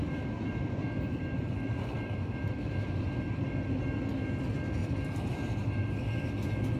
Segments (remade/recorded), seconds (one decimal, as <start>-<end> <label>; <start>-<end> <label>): 0.0-3.7 remade; 3.7-4.8 recorded; 4.8-6.8 remade